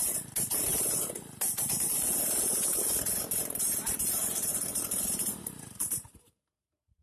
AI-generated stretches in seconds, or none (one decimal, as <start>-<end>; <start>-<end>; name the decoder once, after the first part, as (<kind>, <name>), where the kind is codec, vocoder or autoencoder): 0.0-7.0 (vocoder, BigVGAN v2)